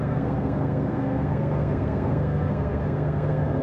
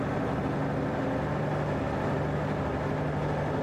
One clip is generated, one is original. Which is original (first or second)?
second